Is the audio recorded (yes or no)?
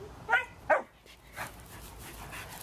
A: no